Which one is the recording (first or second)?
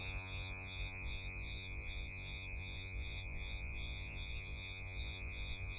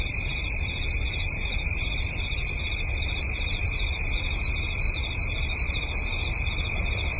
second